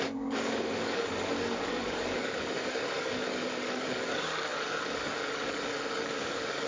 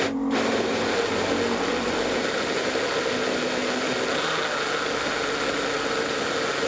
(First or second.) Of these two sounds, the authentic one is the second